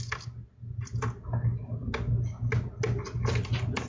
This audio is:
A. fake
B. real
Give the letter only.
B